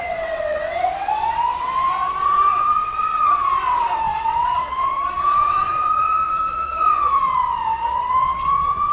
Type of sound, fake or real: fake